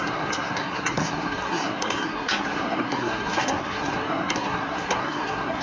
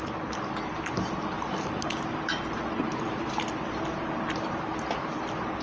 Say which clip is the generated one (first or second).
first